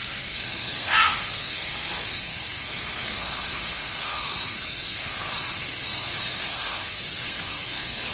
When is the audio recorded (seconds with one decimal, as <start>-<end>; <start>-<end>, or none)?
none